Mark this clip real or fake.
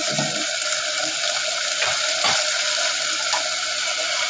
real